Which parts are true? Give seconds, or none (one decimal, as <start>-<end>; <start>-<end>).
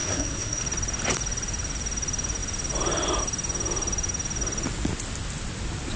0.6-6.0